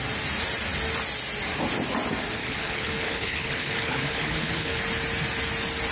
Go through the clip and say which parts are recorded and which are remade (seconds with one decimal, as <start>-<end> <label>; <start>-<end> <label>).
0.0-2.4 recorded; 2.4-4.8 remade; 4.8-5.9 recorded